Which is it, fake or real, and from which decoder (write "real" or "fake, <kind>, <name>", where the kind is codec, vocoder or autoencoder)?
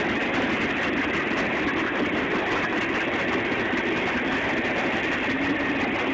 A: real